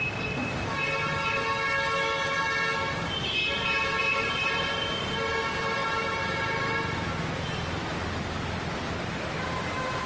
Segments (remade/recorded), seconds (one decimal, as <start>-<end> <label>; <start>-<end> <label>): 0.0-4.0 recorded; 4.0-5.0 remade; 5.0-5.8 recorded; 5.8-7.1 remade; 7.1-10.1 recorded

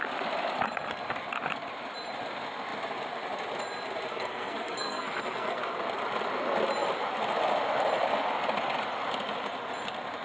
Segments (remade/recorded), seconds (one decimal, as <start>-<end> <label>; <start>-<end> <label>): 0.0-4.1 recorded; 4.1-5.6 remade; 5.6-10.2 recorded

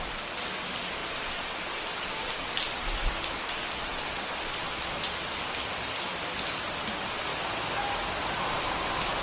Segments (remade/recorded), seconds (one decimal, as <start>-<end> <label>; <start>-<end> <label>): 0.0-9.2 recorded

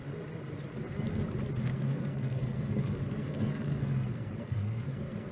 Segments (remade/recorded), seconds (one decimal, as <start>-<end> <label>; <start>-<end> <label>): 0.0-1.7 recorded; 1.7-5.3 remade